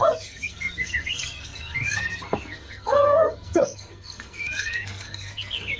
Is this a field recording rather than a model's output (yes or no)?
no